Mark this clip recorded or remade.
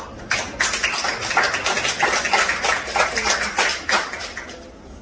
recorded